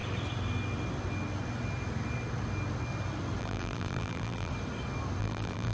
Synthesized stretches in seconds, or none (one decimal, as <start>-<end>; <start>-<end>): 3.4-4.5; 5.2-5.7